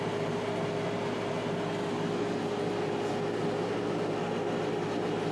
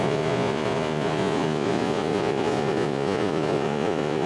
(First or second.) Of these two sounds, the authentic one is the first